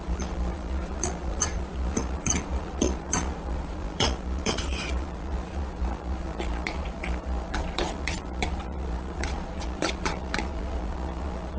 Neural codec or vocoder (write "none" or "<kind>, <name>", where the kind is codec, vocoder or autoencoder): vocoder, Vocos